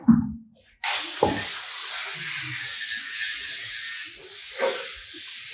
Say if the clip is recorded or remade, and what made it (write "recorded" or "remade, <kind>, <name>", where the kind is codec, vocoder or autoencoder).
recorded